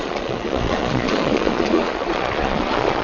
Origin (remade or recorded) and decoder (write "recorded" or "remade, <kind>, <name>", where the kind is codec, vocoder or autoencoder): remade, vocoder, Vocos